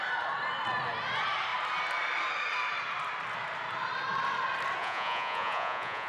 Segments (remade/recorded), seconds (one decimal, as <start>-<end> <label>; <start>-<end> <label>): 0.0-4.8 recorded; 4.8-6.1 remade